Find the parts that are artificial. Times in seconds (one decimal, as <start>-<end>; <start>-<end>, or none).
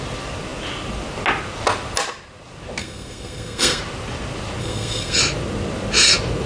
2.8-3.8; 4.6-5.2